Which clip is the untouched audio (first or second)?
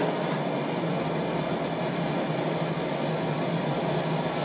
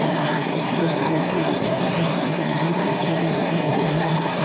first